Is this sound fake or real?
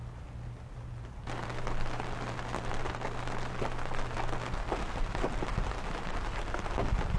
real